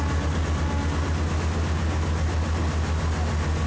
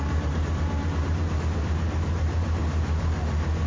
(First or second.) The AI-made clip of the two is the second